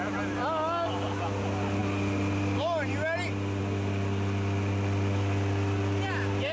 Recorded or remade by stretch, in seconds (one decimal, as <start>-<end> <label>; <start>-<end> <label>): 0.0-6.5 recorded